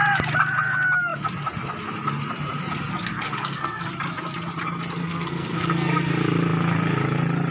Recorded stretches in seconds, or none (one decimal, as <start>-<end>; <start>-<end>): 0.0-2.9; 3.9-5.0; 6.1-7.5